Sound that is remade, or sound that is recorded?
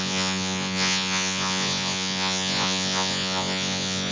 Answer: remade